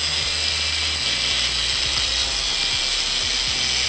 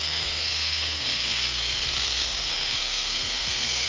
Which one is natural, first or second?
first